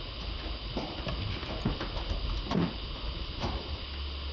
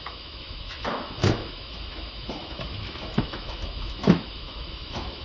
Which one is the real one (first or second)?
first